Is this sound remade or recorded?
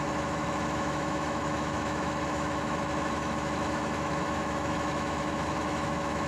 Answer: remade